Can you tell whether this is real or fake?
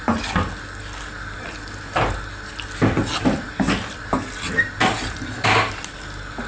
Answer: real